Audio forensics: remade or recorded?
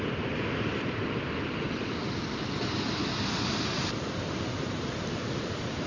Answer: remade